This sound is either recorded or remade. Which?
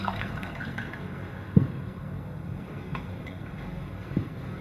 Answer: remade